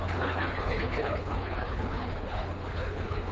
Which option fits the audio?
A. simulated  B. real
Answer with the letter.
A